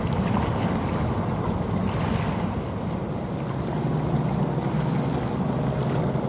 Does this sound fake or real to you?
real